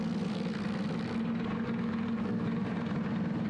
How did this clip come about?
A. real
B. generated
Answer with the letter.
A